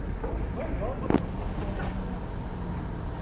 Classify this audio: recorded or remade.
recorded